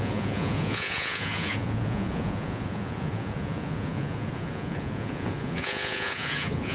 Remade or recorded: remade